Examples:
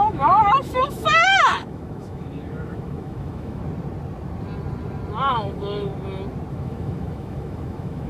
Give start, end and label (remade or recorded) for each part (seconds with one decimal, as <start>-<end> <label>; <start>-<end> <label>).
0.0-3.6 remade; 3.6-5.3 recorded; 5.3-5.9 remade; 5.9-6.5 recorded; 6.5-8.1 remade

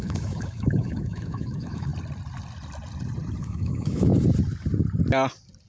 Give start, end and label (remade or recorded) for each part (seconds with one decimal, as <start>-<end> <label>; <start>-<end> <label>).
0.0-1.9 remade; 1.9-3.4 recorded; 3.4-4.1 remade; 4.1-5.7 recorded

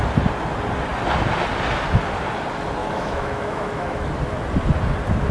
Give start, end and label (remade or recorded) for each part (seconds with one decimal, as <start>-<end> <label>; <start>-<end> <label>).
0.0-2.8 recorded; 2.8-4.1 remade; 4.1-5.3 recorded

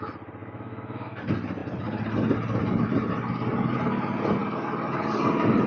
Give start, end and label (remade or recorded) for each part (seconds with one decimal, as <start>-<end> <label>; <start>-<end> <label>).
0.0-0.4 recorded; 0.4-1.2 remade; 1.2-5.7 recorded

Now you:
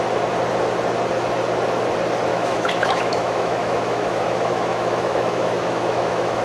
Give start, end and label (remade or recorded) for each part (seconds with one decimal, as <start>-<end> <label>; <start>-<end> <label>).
0.0-2.3 recorded; 2.3-6.4 remade